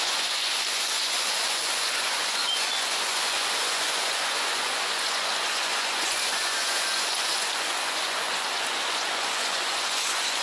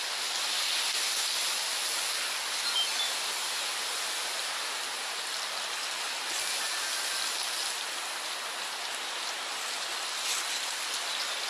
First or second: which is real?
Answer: second